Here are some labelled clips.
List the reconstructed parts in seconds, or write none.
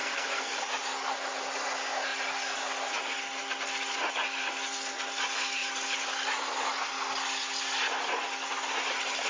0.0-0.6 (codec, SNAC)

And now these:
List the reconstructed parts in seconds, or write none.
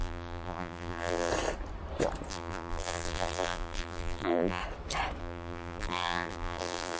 0.0-1.3 (vocoder, BigVGAN v2); 2.3-4.6; 5.2-7.0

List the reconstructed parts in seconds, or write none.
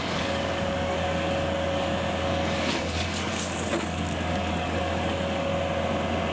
0.0-5.5 (codec, DAC)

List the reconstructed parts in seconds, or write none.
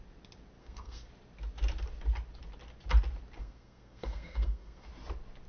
0.6-1.1 (codec, SNAC); 3.4-4.9